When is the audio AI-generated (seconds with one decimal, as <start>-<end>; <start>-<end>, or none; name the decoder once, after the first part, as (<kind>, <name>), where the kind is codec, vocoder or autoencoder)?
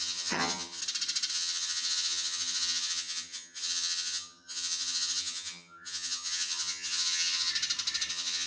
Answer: 0.0-0.8 (vocoder, HiFi-GAN); 1.3-7.5; 8.1-8.5